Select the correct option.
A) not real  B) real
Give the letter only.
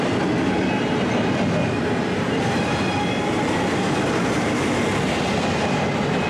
B